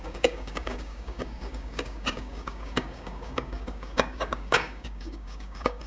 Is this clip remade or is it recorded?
remade